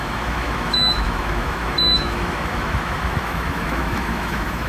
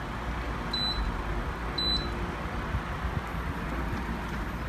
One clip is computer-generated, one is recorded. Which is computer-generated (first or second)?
first